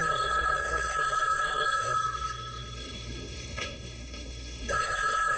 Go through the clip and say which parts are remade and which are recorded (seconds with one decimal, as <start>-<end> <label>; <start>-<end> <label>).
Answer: 0.0-5.4 remade